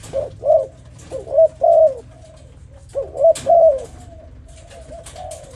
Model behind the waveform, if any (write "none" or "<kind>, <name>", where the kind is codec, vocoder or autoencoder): none